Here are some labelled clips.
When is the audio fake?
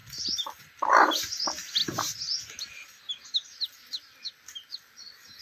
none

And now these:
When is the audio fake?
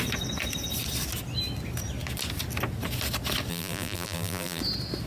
3.5-4.6 (vocoder, BigVGAN v2)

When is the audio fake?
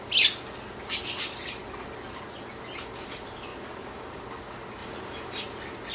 3.5-4.2 (vocoder, BigVGAN v2); 4.8-5.4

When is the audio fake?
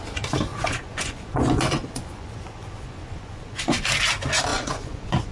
0.5-3.7 (vocoder, Vocos); 4.5-5.3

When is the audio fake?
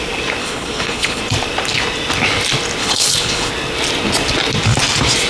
0.4-1.2 (codec, HILCodec); 2.8-3.5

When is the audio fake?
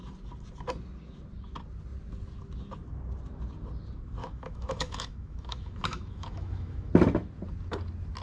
4.2-6.9 (autoencoder, DAC-VAE)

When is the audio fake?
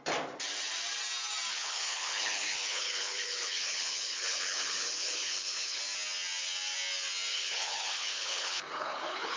1.5-5.8 (codec, HILCodec); 7.3-9.4